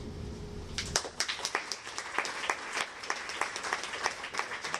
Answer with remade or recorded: recorded